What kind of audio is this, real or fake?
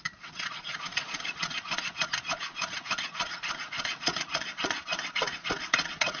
fake